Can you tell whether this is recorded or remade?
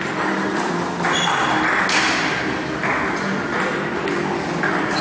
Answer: recorded